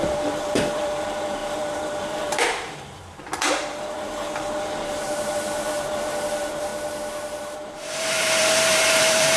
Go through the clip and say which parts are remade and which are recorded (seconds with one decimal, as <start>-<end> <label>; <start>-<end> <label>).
0.0-6.7 remade; 6.7-7.4 recorded; 7.4-9.4 remade